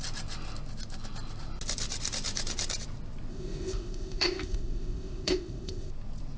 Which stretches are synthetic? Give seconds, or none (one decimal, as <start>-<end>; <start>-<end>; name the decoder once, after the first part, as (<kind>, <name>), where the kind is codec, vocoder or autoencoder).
3.3-5.9 (codec, ZipCodec)